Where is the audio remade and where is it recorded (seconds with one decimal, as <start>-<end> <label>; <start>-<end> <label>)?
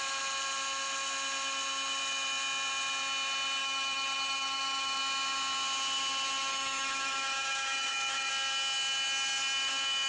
0.0-3.6 recorded; 3.6-5.0 remade; 5.0-6.5 recorded; 6.5-8.3 remade; 8.3-10.1 recorded